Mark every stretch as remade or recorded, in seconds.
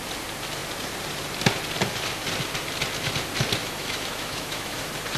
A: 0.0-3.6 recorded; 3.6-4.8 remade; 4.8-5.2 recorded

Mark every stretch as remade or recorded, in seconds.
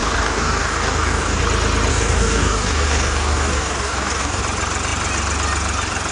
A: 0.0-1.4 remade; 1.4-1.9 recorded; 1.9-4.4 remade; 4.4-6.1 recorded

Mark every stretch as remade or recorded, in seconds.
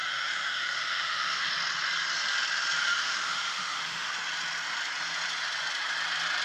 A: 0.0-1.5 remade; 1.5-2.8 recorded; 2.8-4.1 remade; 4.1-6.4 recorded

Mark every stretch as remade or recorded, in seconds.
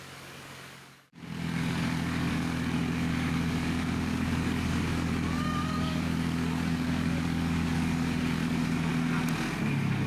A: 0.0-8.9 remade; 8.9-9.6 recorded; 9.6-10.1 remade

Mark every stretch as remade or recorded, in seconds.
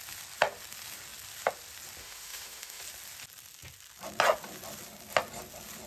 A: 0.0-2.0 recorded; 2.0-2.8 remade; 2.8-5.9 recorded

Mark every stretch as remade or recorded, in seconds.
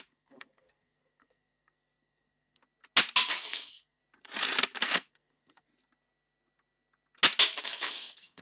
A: 0.0-2.6 remade; 2.6-3.3 recorded; 3.3-4.0 remade; 4.0-4.8 recorded; 4.8-5.7 remade; 5.7-7.6 recorded; 7.6-8.4 remade